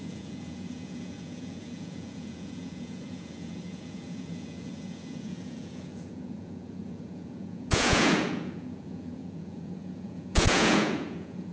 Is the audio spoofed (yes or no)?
yes